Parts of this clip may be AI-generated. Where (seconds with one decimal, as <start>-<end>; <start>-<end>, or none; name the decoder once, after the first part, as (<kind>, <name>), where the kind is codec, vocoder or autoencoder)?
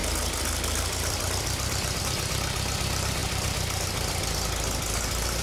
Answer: 0.0-2.0 (vocoder, BigVGAN v2); 3.2-4.2